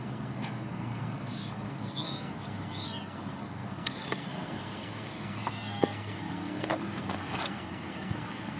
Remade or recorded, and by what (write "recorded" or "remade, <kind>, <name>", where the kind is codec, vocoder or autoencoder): remade, codec, SNAC